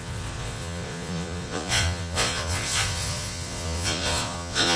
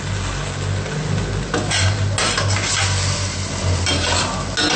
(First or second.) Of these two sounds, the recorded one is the second